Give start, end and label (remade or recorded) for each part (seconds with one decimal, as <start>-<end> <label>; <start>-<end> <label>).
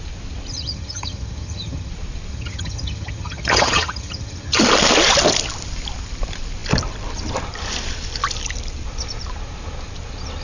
0.0-0.5 recorded; 0.5-1.9 remade; 1.9-2.3 recorded; 2.3-4.6 remade; 4.6-10.4 recorded